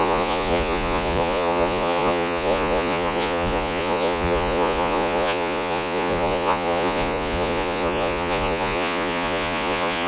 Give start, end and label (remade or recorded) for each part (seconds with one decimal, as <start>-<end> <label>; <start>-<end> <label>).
0.0-10.1 remade